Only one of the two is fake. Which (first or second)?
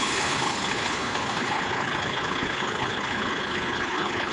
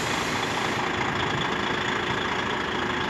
first